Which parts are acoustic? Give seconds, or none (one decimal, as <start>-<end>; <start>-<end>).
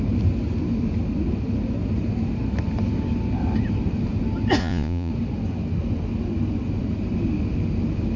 0.0-4.6; 5.1-8.2